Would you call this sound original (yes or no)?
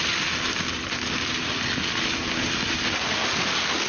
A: yes